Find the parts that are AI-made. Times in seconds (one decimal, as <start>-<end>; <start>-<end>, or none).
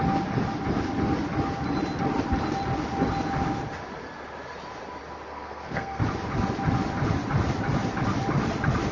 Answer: 5.3-6.0